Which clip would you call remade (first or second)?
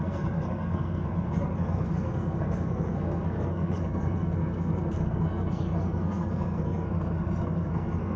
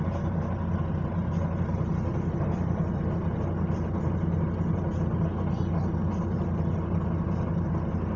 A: first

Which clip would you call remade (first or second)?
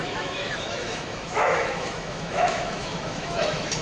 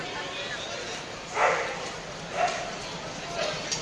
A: first